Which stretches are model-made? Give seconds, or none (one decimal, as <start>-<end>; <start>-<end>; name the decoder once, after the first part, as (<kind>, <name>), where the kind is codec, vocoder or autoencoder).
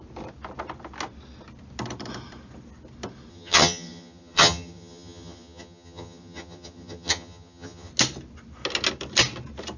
3.3-7.9 (vocoder, HiFi-GAN)